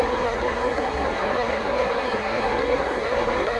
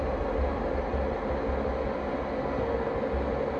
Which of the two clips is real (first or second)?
second